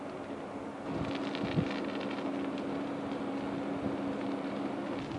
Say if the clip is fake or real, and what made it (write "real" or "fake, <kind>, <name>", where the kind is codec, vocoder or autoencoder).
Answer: real